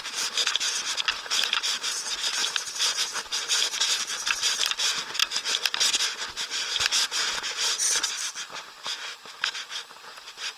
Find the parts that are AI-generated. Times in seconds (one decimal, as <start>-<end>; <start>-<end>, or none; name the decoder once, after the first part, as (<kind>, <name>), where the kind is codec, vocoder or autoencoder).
0.0-2.4 (vocoder, BigVGAN v2); 3.6-5.2; 9.7-10.6